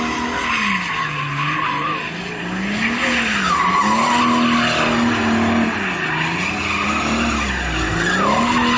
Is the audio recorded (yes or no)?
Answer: yes